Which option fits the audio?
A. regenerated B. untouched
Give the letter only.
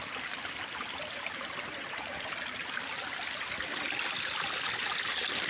B